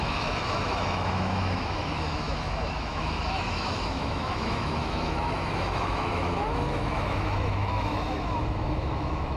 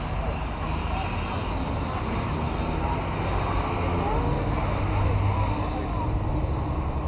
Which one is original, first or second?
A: second